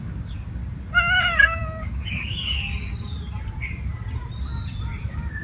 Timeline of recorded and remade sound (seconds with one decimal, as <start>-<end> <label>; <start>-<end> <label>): 0.0-0.6 remade; 0.6-1.2 recorded; 1.2-2.6 remade; 2.6-5.0 recorded; 5.0-5.4 remade